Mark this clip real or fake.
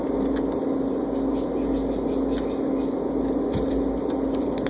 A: real